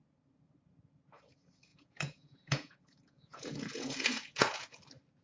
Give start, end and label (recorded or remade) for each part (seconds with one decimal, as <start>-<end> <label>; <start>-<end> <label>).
0.0-1.7 recorded; 1.7-4.8 remade; 4.8-5.2 recorded